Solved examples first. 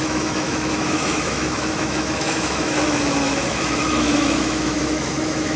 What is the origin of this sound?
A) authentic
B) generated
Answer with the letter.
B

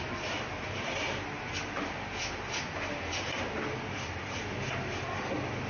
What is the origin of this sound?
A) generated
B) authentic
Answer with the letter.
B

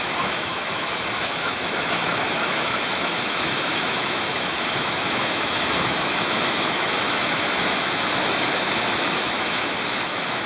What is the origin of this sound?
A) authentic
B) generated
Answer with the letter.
B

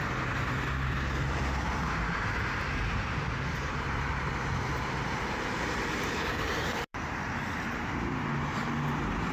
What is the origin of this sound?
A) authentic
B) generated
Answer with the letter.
B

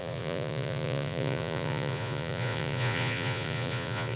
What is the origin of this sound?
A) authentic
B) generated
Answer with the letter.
B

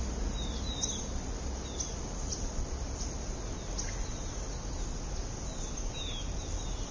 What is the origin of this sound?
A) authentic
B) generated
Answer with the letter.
A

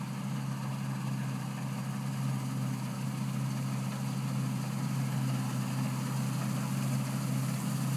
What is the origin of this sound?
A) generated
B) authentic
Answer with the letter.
B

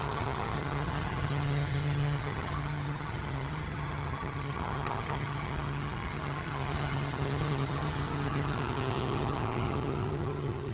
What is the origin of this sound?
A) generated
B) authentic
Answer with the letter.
A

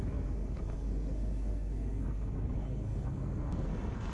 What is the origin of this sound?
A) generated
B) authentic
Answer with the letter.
A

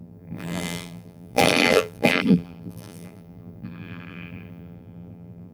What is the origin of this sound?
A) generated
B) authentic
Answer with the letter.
A